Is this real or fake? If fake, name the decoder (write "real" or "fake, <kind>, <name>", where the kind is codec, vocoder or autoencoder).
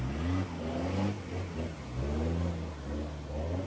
real